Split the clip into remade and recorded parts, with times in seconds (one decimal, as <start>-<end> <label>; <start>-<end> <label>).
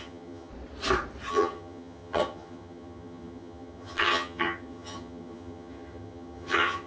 0.0-0.5 remade; 0.5-1.3 recorded; 1.3-6.9 remade